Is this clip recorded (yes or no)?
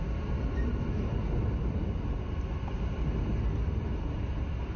yes